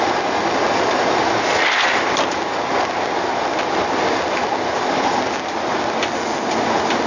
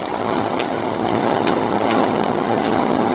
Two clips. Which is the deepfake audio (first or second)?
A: second